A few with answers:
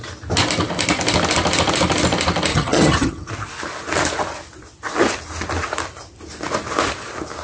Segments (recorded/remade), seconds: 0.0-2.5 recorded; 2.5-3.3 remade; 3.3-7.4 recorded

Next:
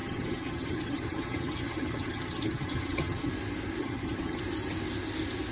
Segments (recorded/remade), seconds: 0.0-3.3 remade; 3.3-3.8 recorded; 3.8-4.4 remade; 4.4-5.5 recorded

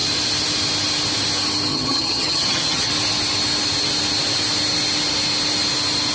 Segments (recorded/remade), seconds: 0.0-1.7 recorded; 1.7-2.9 remade; 2.9-6.1 recorded

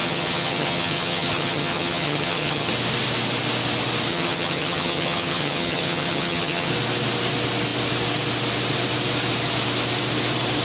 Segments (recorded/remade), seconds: 0.0-2.7 remade; 2.7-4.1 recorded; 4.1-6.7 remade; 6.7-10.6 recorded

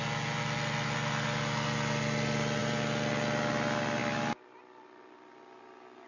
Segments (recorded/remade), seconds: 0.0-6.1 recorded

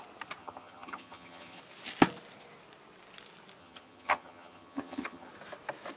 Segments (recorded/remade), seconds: 0.0-0.4 recorded; 0.4-1.6 remade; 1.6-3.6 recorded; 3.6-5.3 remade; 5.3-6.0 recorded

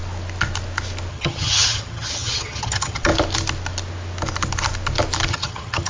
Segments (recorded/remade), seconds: 0.0-1.1 recorded; 1.1-3.1 remade; 3.1-5.3 recorded; 5.3-5.9 remade